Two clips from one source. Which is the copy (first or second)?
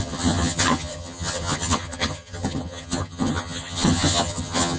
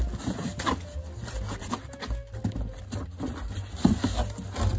first